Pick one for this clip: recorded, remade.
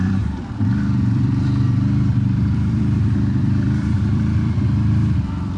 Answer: remade